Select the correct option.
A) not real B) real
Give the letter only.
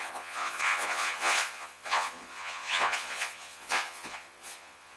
A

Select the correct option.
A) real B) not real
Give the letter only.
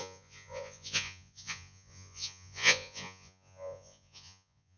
B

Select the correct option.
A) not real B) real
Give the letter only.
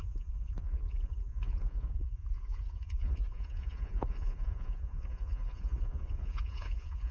A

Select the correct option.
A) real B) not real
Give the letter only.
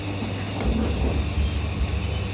A